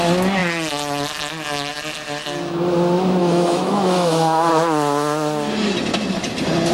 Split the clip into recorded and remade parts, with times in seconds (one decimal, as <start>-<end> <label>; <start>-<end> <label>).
0.0-3.2 recorded; 3.2-4.5 remade; 4.5-6.7 recorded